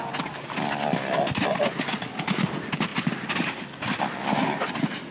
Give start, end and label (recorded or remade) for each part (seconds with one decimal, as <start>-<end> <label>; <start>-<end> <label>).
0.0-5.1 recorded